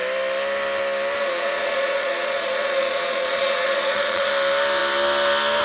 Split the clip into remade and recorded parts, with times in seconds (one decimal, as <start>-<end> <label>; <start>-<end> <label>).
0.0-1.2 recorded; 1.2-4.3 remade; 4.3-5.6 recorded